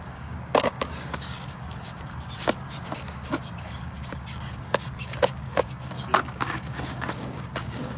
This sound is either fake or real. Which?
fake